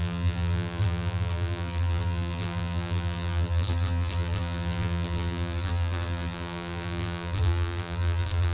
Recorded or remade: remade